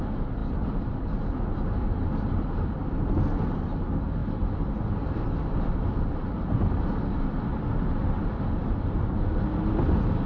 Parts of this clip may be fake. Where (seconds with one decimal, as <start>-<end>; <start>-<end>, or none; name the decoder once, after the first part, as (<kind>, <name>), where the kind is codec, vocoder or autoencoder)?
0.4-3.1 (vocoder, BigVGAN v2); 4.2-9.4